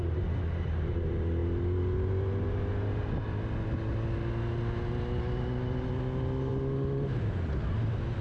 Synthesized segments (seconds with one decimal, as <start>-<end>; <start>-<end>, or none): none